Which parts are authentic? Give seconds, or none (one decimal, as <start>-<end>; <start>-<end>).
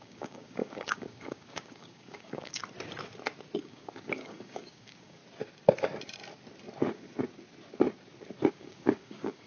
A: 2.6-3.6; 5.2-8.5